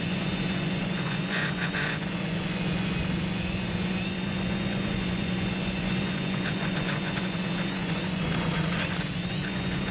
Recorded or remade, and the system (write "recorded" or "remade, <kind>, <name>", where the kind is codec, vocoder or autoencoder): remade, vocoder, Vocos